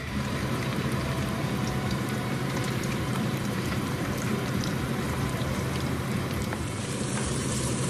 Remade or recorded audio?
remade